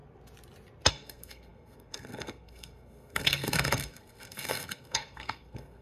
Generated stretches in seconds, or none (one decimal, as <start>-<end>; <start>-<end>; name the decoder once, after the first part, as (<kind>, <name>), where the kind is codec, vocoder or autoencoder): 0.9-5.8 (codec, SNAC)